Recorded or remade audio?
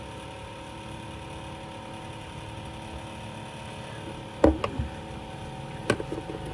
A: recorded